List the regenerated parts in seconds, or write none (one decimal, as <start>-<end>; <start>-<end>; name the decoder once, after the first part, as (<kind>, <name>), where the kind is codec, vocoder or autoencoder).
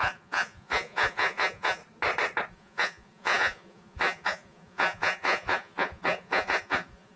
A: 0.0-1.8 (vocoder, Vocos); 2.5-7.2